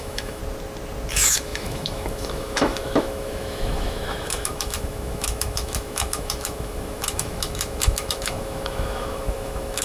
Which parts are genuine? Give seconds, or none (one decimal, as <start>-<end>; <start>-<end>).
0.4-1.1

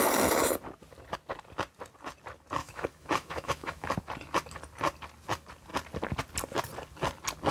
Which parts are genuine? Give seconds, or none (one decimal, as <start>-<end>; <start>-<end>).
0.0-2.6; 3.9-7.5